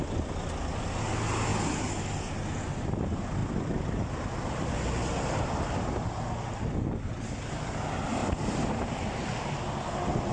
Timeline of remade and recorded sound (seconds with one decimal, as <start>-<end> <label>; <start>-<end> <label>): 0.0-10.3 recorded